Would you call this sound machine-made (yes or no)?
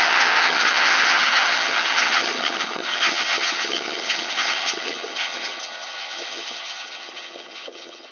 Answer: yes